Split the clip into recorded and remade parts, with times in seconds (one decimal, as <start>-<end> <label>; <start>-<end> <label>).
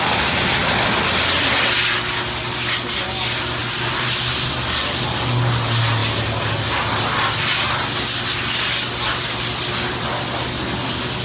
0.0-11.2 recorded